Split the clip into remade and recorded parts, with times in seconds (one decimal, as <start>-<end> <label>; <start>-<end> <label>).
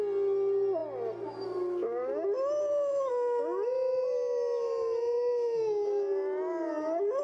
0.0-7.2 recorded